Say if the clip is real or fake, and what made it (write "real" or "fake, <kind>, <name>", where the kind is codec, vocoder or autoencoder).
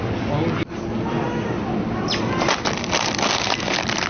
real